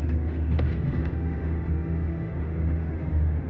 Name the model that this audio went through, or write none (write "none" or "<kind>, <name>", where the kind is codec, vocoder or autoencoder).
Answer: autoencoder, DAC-VAE